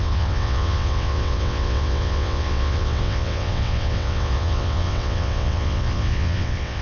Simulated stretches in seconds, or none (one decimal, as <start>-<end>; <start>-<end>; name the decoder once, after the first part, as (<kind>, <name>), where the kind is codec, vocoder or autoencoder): 0.0-6.8 (vocoder, WaveNeXt)